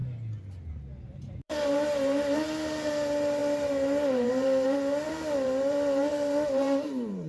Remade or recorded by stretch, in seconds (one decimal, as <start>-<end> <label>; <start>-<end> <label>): 0.0-0.7 recorded; 0.7-7.3 remade